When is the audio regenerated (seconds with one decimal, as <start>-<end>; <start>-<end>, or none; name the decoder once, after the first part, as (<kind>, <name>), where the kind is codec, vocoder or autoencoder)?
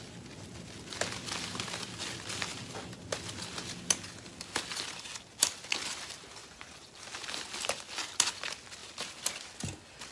6.4-6.9 (vocoder, Vocos)